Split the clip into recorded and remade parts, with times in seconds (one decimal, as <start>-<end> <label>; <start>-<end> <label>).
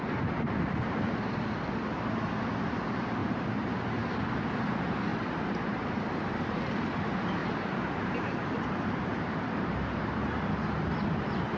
0.0-3.2 recorded; 3.2-4.0 remade; 4.0-5.1 recorded; 5.1-6.6 remade; 6.6-7.4 recorded; 7.4-8.5 remade; 8.5-9.1 recorded; 9.1-10.1 remade; 10.1-11.6 recorded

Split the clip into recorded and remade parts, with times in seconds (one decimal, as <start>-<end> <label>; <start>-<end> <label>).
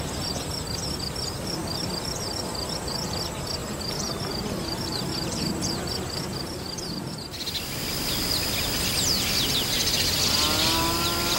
0.0-3.6 recorded; 3.6-5.5 remade; 5.5-11.4 recorded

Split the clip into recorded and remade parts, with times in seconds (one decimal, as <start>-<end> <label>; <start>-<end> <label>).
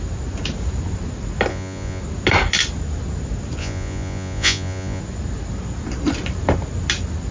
0.0-1.5 recorded; 1.5-2.0 remade; 2.0-3.6 recorded; 3.6-5.0 remade; 5.0-7.3 recorded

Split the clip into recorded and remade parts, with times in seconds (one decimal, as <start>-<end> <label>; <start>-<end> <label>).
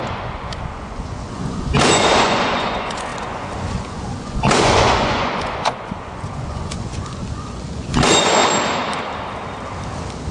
0.0-8.4 remade; 8.4-10.3 recorded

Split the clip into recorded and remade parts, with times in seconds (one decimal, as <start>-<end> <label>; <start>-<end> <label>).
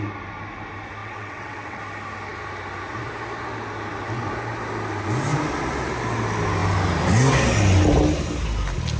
0.0-1.0 recorded; 1.0-1.8 remade; 1.8-9.0 recorded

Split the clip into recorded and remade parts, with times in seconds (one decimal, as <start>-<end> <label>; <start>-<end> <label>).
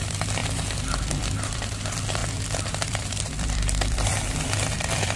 0.0-5.2 remade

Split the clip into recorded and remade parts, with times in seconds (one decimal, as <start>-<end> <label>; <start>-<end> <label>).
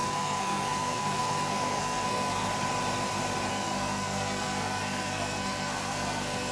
0.0-2.5 remade; 2.5-3.5 recorded; 3.5-6.5 remade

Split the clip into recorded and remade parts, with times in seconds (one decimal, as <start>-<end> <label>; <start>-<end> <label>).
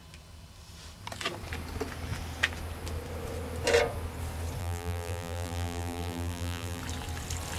0.0-4.6 recorded; 4.6-6.8 remade; 6.8-7.6 recorded